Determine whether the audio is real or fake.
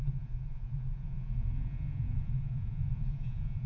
fake